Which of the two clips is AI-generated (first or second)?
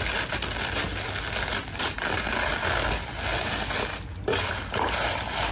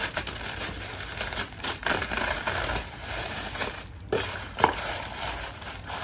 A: second